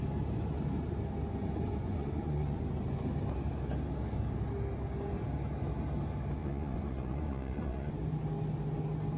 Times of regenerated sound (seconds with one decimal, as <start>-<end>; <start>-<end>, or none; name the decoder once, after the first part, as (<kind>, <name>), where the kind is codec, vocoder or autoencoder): 1.4-2.6 (vocoder, Vocos); 6.4-7.9